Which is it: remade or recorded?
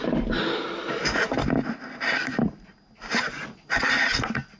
recorded